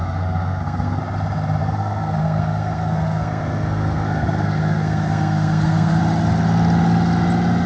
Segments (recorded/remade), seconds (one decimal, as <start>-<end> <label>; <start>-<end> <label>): 0.0-1.0 remade; 1.0-1.6 recorded; 1.6-6.0 remade; 6.0-7.7 recorded